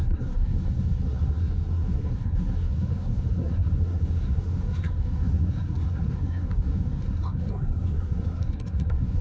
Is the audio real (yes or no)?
no